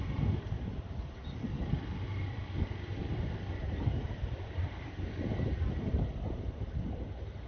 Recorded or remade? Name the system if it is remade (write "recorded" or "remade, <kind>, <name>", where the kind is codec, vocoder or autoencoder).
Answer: recorded